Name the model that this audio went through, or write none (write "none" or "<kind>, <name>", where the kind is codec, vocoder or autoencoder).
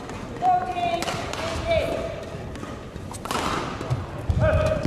none